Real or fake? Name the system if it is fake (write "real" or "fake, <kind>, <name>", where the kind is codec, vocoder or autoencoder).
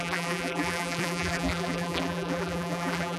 fake, vocoder, BigVGAN v2